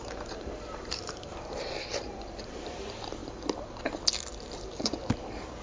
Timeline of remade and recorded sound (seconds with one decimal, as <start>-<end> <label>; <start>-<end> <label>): 0.0-3.2 remade; 3.2-4.6 recorded; 4.6-5.6 remade